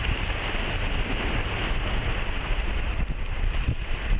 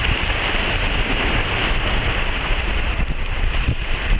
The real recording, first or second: first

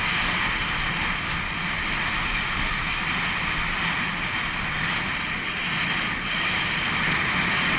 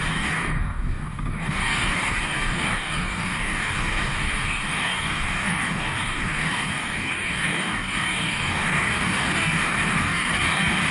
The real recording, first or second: first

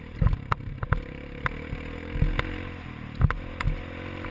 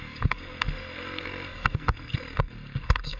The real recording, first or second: first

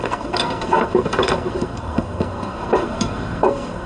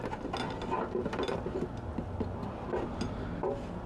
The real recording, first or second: second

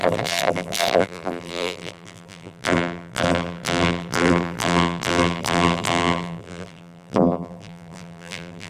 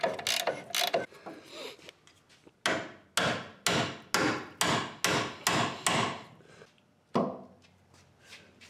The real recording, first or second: second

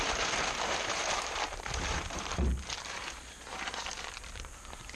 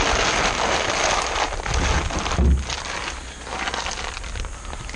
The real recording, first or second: second